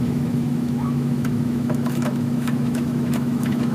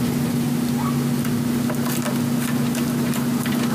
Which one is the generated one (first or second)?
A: first